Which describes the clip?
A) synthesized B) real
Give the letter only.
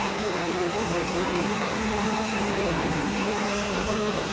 A